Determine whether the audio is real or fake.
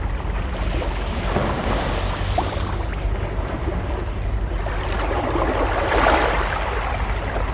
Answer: real